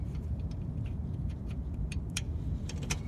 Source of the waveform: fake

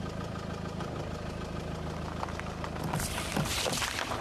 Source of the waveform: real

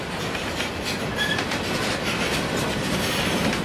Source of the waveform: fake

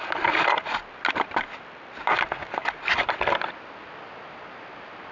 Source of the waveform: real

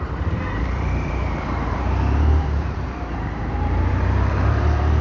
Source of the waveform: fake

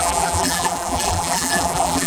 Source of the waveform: fake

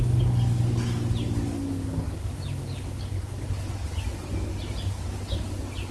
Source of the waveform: real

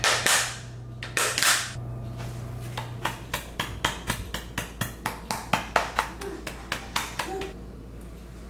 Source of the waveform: real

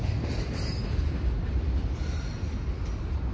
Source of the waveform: real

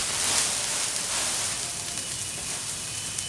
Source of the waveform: real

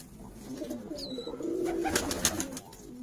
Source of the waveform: real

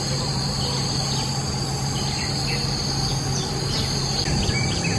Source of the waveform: real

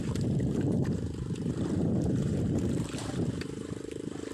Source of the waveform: fake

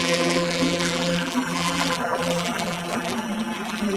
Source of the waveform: fake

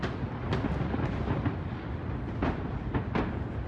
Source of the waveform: real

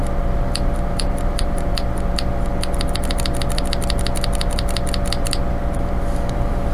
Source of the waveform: fake